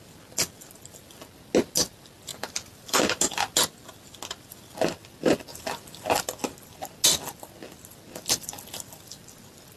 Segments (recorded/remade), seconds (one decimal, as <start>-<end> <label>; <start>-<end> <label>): 0.0-2.3 recorded; 2.3-3.2 remade; 3.2-9.8 recorded